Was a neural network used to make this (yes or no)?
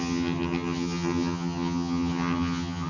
yes